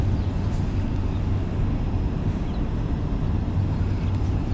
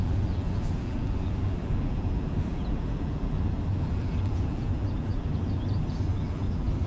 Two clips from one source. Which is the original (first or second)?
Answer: first